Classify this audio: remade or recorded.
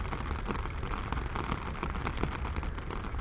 recorded